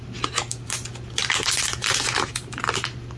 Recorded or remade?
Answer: remade